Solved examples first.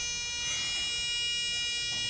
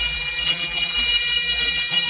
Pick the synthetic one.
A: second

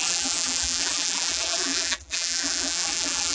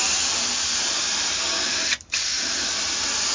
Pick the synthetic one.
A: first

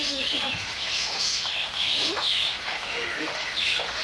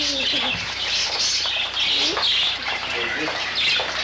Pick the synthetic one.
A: first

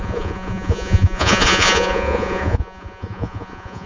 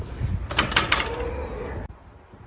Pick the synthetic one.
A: first